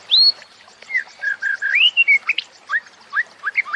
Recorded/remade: recorded